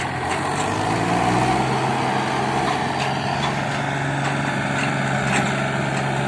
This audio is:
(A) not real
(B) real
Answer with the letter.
B